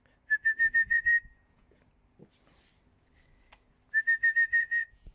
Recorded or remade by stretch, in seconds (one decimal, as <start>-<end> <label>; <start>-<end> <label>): 0.0-0.9 recorded; 0.9-1.8 remade; 1.8-4.6 recorded; 4.6-5.1 remade